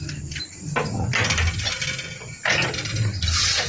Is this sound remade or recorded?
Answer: recorded